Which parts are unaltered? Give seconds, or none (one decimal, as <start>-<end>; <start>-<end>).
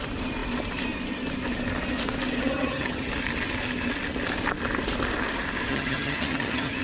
0.0-2.4; 3.1-5.7